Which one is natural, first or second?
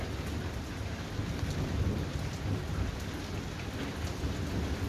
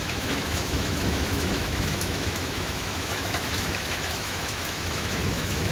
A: first